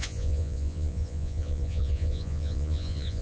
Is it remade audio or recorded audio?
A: remade